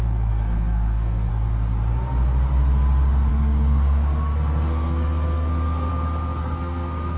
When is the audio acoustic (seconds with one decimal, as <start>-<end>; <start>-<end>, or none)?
1.3-3.3; 5.9-6.4